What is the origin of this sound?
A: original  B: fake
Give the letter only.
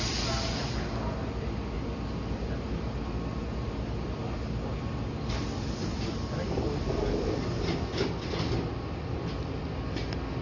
A